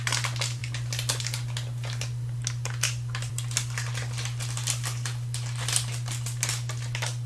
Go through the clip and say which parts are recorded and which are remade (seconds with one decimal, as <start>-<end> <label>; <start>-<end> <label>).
0.0-7.3 recorded